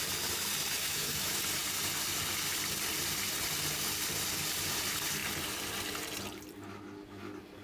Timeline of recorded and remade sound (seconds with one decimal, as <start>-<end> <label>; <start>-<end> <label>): 0.0-0.8 recorded; 0.8-1.4 remade; 1.4-7.6 recorded